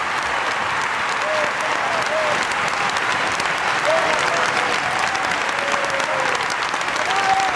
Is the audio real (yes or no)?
yes